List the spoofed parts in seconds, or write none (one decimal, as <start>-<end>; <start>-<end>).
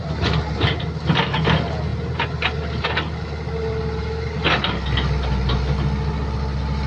none